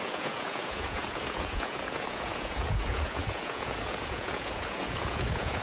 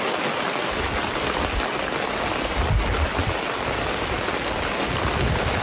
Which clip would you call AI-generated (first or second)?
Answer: first